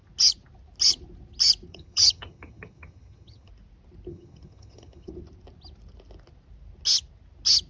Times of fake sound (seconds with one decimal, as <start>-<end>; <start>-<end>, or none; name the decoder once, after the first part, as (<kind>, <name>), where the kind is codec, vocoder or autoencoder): 1.7-3.5 (vocoder, HiFi-GAN); 4.1-5.1

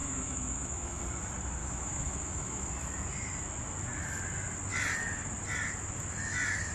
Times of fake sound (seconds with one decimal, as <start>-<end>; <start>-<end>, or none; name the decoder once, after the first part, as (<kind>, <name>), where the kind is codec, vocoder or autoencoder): 0.0-1.0 (autoencoder, DAC-VAE); 1.6-2.7

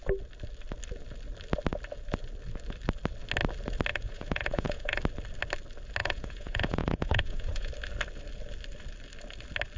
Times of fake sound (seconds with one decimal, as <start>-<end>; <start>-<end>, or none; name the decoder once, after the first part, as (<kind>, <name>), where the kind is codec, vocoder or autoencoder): 3.9-5.0 (vocoder, Vocos); 6.0-7.7

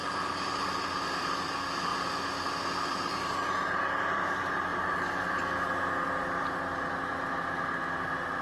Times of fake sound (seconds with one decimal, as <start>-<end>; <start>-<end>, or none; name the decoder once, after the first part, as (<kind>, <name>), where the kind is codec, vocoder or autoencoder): none

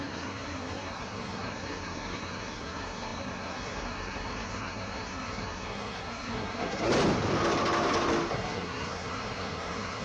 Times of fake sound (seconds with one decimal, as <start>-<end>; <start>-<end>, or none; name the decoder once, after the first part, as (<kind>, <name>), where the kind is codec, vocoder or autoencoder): 0.0-6.9 (codec, SNAC); 8.3-10.0

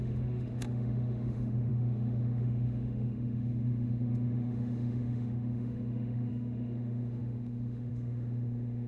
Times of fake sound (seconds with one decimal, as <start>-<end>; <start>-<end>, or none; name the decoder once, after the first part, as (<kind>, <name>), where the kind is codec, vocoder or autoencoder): 0.0-8.9 (autoencoder, DAC-VAE)

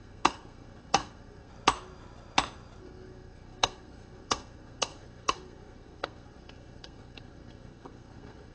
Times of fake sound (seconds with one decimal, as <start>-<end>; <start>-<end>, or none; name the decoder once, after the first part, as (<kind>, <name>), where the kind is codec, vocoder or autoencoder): 0.0-1.5 (codec, SNAC); 2.8-8.5

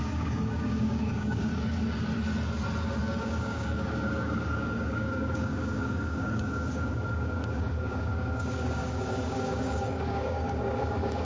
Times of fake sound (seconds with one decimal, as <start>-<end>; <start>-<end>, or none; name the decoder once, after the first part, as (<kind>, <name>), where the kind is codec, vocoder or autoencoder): 0.0-1.5 (codec, DAC); 3.0-11.2